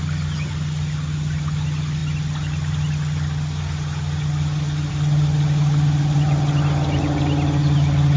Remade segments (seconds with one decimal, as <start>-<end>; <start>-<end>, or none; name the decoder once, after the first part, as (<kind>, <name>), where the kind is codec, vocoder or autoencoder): none